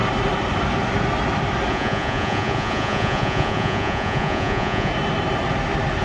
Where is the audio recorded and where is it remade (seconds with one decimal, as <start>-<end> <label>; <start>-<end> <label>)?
0.0-1.7 recorded; 1.7-4.9 remade; 4.9-6.0 recorded